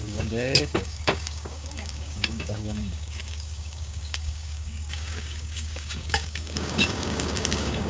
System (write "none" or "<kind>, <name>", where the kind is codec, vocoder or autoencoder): codec, DAC